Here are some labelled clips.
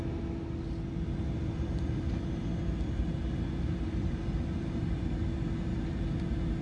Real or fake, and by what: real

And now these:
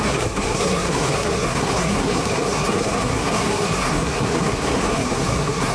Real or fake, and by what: fake, codec, SNAC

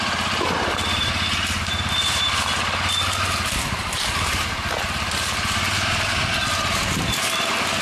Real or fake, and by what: real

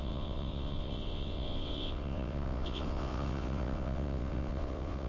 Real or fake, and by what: fake, vocoder, WaveNeXt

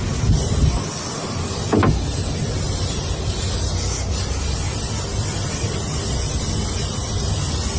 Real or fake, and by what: real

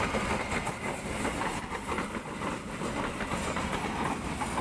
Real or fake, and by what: real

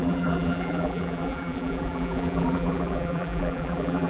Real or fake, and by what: fake, vocoder, BigVGAN v2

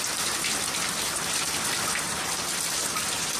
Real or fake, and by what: real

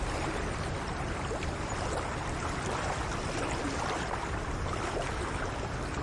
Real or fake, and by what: real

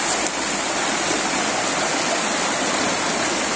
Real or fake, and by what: real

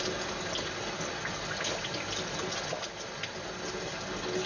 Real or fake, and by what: real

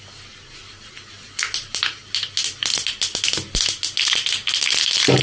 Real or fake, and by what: real